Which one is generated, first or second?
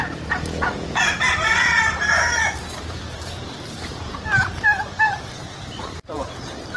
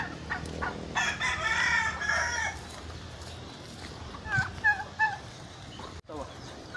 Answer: first